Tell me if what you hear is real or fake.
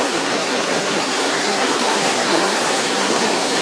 fake